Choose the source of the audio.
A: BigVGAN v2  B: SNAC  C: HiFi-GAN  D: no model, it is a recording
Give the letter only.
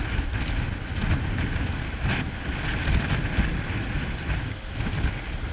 D